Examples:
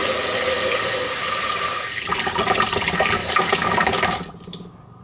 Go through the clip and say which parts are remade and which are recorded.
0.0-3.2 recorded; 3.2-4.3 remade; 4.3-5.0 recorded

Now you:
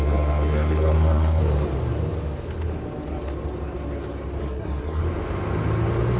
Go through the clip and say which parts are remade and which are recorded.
0.0-1.4 remade; 1.4-4.4 recorded; 4.4-5.0 remade; 5.0-6.2 recorded

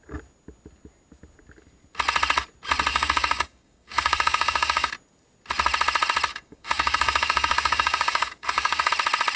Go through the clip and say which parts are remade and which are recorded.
0.0-2.9 recorded; 2.9-4.9 remade; 4.9-6.3 recorded; 6.3-8.9 remade; 8.9-9.4 recorded

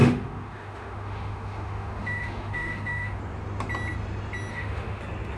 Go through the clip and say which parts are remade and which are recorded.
0.0-3.2 remade; 3.2-4.5 recorded; 4.5-5.0 remade; 5.0-5.4 recorded